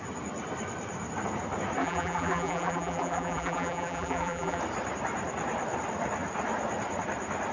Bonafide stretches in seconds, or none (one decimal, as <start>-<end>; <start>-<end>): 0.0-1.8; 4.6-7.5